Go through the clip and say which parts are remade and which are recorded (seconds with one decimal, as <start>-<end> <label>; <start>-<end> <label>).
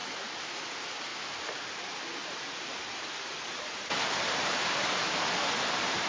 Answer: 0.0-1.1 remade; 1.1-1.8 recorded; 1.8-6.1 remade